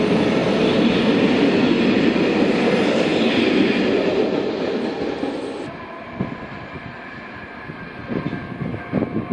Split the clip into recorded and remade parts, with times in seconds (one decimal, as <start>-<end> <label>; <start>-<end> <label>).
0.0-9.3 recorded

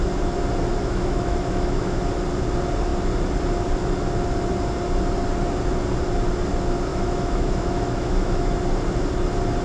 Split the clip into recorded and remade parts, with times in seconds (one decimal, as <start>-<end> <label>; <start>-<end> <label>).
0.0-0.7 recorded; 0.7-2.0 remade; 2.0-6.9 recorded; 6.9-8.6 remade; 8.6-9.6 recorded

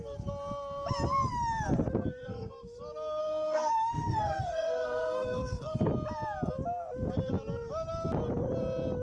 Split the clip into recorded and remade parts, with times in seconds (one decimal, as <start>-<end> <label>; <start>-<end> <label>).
0.0-2.3 recorded; 2.3-2.8 remade; 2.8-3.2 recorded; 3.2-5.9 remade; 5.9-9.0 recorded